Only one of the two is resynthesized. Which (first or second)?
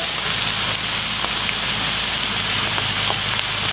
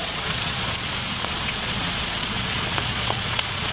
second